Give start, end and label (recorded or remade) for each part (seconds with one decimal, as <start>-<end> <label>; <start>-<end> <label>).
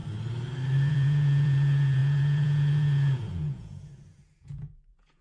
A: 0.0-0.9 recorded; 0.9-5.2 remade